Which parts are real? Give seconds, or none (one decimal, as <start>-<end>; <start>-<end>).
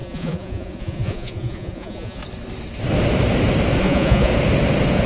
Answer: 2.2-3.8; 4.3-5.1